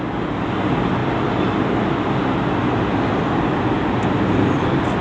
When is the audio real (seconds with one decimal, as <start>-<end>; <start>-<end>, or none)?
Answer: 0.0-5.0